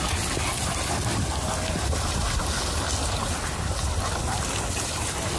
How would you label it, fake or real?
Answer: real